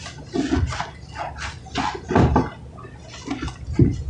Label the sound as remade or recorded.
recorded